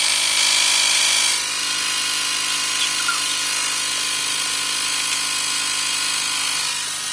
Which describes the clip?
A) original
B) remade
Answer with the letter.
A